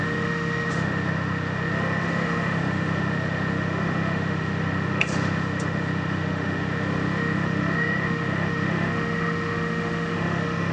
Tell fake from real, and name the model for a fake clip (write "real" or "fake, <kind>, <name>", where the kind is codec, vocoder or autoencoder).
fake, autoencoder, DAC-VAE